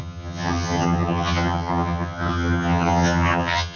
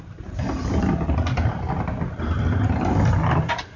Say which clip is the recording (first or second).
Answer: second